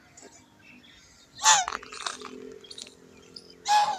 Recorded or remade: recorded